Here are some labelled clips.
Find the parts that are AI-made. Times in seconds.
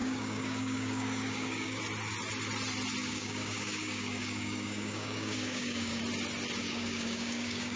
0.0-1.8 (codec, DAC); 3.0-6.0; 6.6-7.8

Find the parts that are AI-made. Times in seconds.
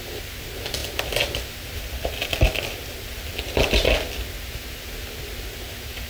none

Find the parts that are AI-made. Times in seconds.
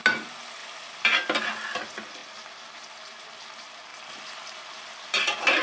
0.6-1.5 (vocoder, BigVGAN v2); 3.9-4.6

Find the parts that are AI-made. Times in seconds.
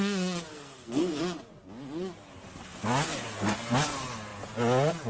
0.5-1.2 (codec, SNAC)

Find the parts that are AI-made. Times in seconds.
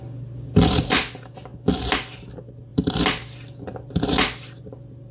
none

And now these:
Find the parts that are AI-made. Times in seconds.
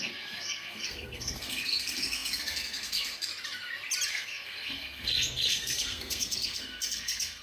0.0-3.3 (codec, SNAC); 4.1-7.4